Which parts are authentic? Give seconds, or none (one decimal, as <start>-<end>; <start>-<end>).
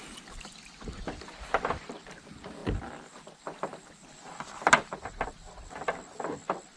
0.0-6.8